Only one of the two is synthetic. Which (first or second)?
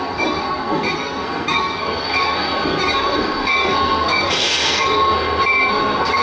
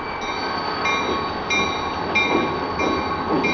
first